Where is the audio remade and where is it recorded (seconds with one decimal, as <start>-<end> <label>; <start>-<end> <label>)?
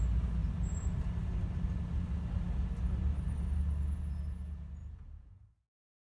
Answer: 0.0-4.8 recorded; 4.8-6.0 remade